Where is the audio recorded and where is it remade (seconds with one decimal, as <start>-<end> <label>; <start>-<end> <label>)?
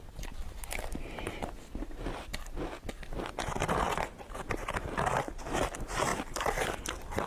0.0-7.3 recorded